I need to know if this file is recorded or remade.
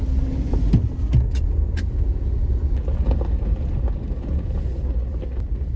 recorded